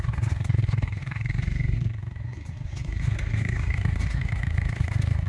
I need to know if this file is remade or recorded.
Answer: remade